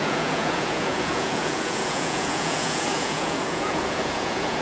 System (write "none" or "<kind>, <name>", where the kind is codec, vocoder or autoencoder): vocoder, Vocos